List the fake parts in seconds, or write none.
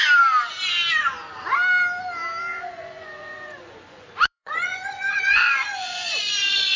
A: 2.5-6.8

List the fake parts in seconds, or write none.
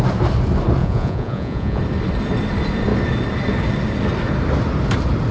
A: 0.8-1.8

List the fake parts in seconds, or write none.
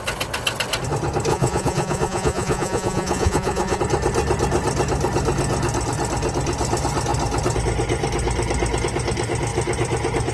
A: 1.3-3.8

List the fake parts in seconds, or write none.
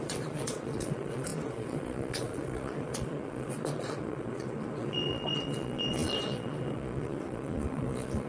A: 0.0-8.3